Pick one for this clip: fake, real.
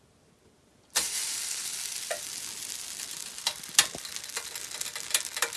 real